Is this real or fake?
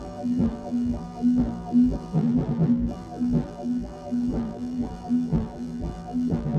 fake